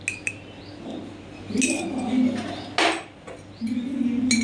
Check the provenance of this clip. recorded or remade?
recorded